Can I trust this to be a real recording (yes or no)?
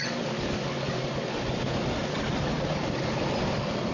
yes